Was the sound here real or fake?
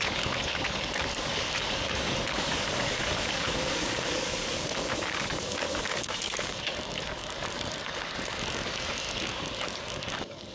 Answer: fake